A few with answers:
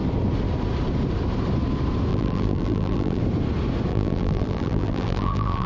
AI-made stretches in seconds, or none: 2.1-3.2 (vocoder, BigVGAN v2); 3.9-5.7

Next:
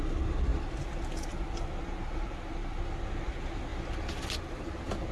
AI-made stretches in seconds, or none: none

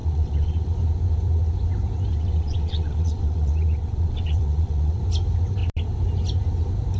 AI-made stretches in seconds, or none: 0.0-0.7 (vocoder, WaveNeXt); 2.1-5.0

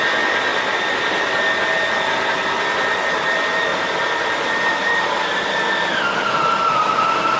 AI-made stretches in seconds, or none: 3.7-6.6 (vocoder, BigVGAN v2)

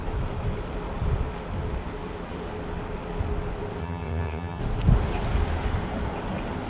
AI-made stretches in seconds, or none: 3.8-4.6 (vocoder, HiFi-GAN)